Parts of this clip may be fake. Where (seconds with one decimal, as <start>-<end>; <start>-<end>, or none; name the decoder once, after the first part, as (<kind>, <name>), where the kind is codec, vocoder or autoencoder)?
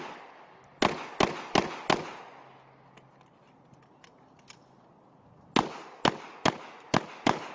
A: none